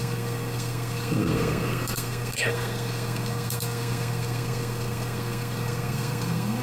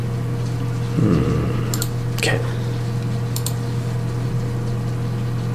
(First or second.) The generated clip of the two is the first